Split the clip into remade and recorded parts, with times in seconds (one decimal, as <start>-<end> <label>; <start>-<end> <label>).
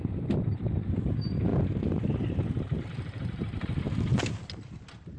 0.0-1.5 recorded; 1.5-2.8 remade; 2.8-5.2 recorded